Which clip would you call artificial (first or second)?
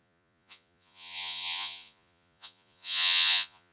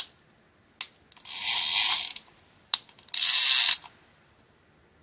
first